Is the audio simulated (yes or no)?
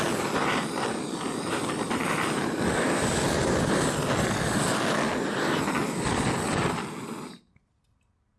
no